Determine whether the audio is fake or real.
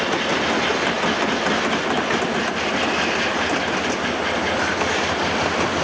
real